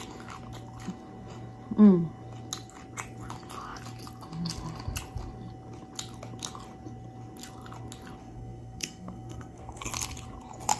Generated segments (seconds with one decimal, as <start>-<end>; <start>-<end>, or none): 8.2-9.9